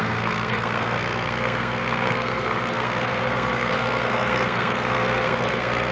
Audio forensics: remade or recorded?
remade